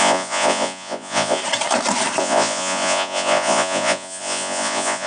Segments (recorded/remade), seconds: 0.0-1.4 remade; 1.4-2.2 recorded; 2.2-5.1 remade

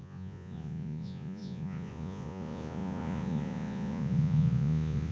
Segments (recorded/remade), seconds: 0.0-5.1 remade

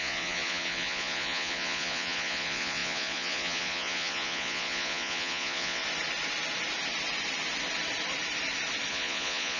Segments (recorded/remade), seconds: 0.0-5.8 remade; 5.8-8.9 recorded; 8.9-9.6 remade

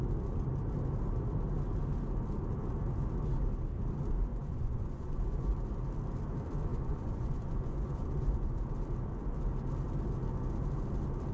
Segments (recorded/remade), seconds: 0.0-4.3 recorded; 4.3-5.5 remade; 5.5-6.7 recorded; 6.7-8.7 remade; 8.7-11.3 recorded

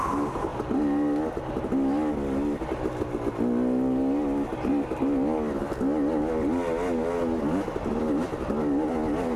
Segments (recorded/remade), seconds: 0.0-9.4 recorded

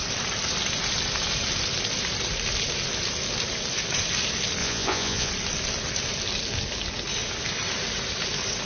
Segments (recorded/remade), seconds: 0.0-4.6 recorded; 4.6-5.3 remade; 5.3-8.7 recorded